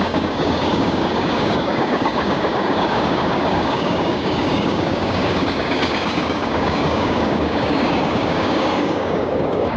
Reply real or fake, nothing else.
fake